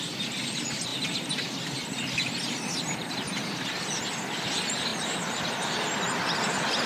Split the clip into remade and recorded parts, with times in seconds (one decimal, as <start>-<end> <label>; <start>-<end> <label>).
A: 0.0-6.9 recorded